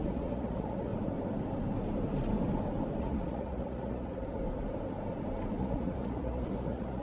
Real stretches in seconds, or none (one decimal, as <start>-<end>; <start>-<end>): 0.9-3.0; 4.4-5.6